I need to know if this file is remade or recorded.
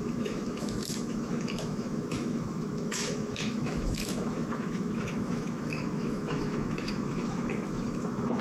remade